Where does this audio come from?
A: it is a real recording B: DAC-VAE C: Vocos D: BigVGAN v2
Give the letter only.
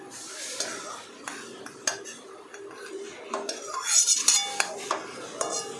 A